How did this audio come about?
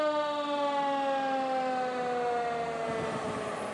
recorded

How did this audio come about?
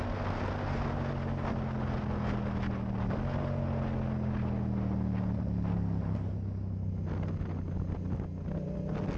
recorded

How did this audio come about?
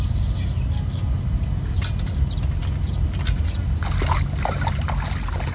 recorded